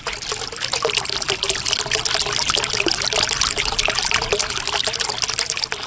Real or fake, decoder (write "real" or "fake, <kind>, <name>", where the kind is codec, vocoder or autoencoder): real